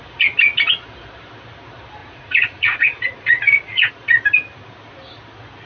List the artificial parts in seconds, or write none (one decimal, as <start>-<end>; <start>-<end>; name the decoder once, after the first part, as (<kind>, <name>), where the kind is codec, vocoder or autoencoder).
2.0-3.9 (vocoder, Vocos)